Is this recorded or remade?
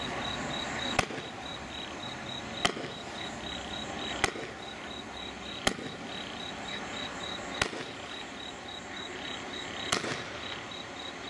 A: recorded